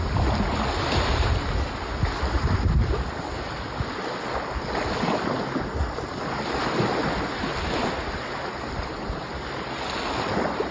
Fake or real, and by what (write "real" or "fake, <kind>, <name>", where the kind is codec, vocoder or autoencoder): real